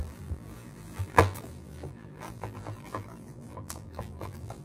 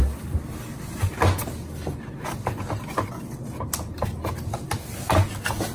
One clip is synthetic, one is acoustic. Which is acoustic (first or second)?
second